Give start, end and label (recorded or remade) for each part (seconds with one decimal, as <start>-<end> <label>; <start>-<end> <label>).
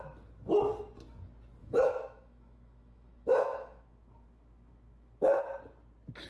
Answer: 0.0-1.6 recorded; 1.6-5.4 remade; 5.4-6.3 recorded